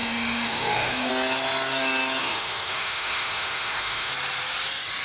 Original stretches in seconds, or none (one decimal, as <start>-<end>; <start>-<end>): 1.1-2.2; 4.1-5.0